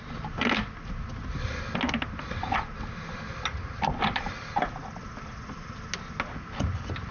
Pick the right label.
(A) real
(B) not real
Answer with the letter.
A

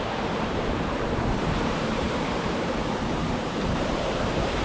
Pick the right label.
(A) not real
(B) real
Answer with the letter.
A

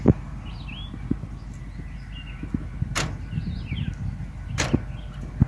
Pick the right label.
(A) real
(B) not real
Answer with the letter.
A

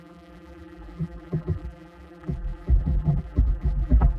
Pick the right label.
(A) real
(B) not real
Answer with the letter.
B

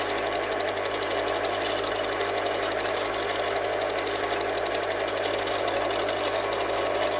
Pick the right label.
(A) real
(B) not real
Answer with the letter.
A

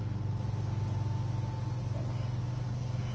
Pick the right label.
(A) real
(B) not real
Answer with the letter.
A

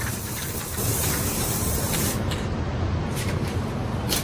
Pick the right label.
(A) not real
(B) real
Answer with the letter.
A